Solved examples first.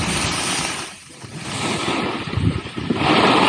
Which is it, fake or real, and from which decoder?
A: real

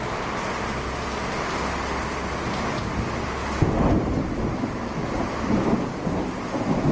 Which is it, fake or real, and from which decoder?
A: real